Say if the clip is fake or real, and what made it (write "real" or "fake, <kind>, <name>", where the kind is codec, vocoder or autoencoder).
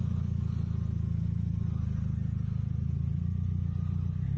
real